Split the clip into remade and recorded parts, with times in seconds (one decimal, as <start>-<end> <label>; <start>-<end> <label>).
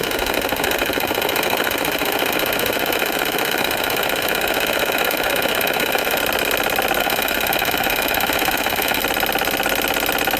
0.0-6.2 remade; 6.2-7.0 recorded; 7.0-9.0 remade; 9.0-10.4 recorded